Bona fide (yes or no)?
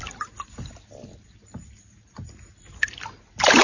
yes